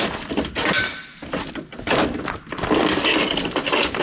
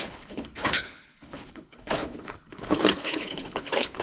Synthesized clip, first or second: second